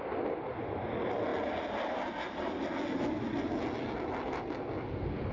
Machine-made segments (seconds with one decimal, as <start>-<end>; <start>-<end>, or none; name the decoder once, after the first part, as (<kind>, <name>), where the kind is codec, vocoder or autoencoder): none